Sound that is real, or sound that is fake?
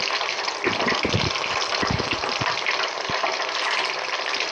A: real